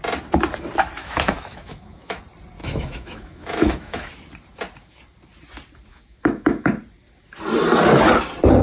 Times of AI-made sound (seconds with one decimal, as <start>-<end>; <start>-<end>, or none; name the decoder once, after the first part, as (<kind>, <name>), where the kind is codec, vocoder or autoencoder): 1.0-2.2 (autoencoder, DAC-VAE); 2.6-4.1; 5.9-6.7